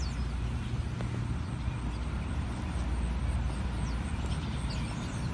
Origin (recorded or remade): recorded